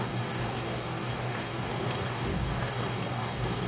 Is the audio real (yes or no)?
no